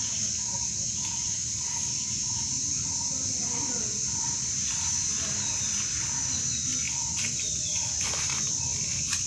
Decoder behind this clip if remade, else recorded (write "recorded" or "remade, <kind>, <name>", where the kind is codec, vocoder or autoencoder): recorded